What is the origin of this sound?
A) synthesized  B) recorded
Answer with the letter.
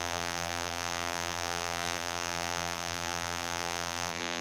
A